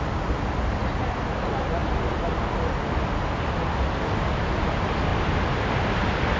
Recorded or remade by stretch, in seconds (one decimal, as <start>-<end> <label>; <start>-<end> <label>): 0.0-6.4 recorded